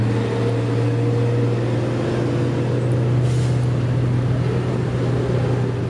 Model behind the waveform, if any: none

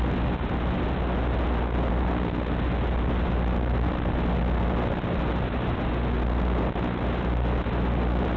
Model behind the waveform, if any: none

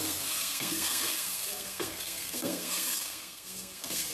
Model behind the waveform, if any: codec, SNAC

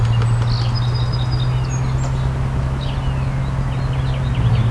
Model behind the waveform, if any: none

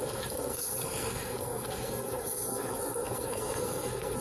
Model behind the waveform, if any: codec, SNAC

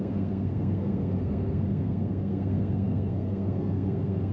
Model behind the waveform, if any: codec, SNAC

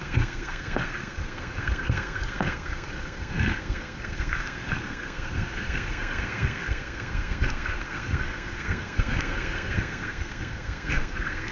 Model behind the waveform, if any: codec, SNAC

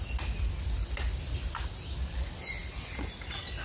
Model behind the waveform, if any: none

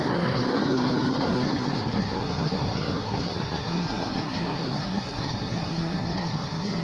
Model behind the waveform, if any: codec, SNAC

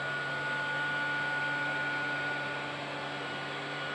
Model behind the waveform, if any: none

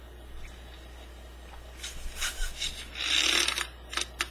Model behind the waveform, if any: none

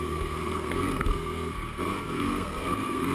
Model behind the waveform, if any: codec, SNAC